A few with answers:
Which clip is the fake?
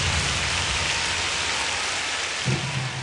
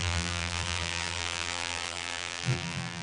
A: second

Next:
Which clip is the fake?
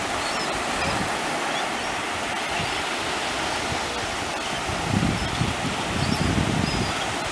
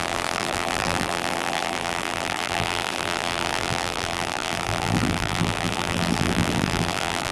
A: second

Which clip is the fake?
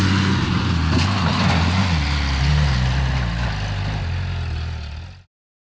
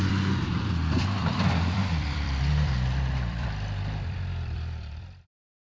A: second